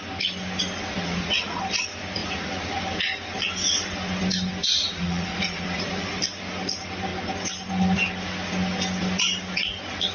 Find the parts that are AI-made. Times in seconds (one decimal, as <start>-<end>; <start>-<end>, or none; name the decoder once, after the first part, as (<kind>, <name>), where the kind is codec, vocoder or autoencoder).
0.9-1.6 (vocoder, Vocos); 2.2-2.8; 4.6-6.1